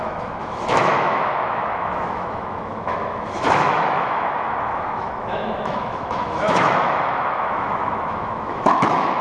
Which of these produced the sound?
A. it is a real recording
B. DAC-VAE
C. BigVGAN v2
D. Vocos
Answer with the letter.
B